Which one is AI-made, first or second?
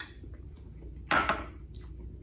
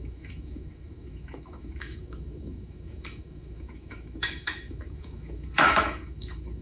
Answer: second